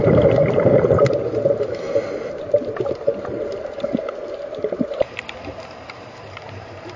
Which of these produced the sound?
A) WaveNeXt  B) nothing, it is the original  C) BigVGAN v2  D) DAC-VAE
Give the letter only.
C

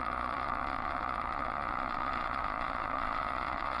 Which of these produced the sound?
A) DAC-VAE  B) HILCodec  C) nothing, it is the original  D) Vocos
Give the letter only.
D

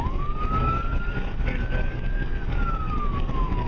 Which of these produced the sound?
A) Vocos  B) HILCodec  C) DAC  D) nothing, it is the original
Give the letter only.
C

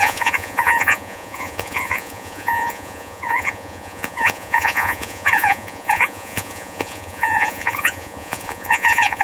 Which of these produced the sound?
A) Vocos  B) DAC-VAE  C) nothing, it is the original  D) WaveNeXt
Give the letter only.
A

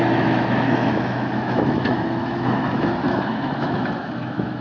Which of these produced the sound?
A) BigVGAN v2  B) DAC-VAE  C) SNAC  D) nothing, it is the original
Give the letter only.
B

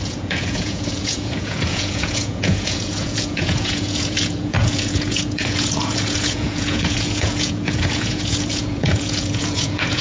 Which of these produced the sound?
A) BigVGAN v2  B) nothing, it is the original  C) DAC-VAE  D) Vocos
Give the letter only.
D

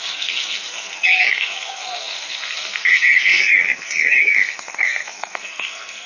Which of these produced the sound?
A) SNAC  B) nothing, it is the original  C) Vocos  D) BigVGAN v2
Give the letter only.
A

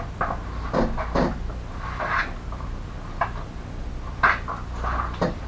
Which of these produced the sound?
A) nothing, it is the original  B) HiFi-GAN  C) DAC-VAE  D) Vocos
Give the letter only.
A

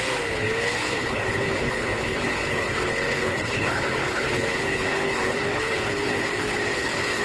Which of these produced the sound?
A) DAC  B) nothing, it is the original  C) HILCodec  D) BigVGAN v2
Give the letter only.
C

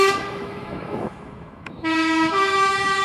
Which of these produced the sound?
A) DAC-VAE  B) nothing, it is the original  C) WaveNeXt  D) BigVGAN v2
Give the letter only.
A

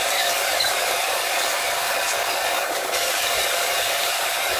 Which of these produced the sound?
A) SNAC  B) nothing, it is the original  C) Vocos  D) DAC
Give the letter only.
D